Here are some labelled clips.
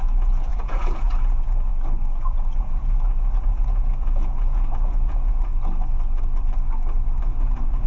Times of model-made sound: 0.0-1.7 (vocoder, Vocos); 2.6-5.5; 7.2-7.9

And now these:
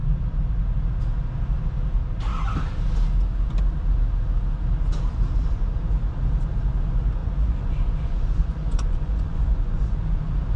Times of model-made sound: 7.2-10.2 (vocoder, Vocos)

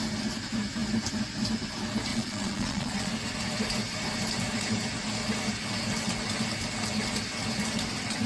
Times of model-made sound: 2.1-3.1 (vocoder, Vocos)

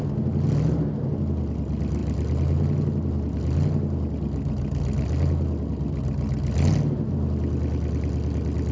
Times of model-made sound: none

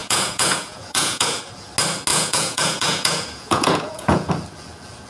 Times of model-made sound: 0.0-1.4 (vocoder, Vocos); 2.1-4.3